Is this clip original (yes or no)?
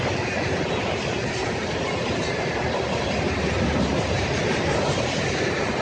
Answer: yes